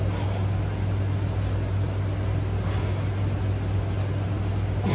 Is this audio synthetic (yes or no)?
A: no